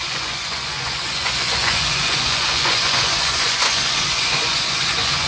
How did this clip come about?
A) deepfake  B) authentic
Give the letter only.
A